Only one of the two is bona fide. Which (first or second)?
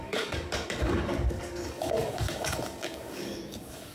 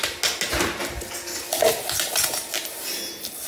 second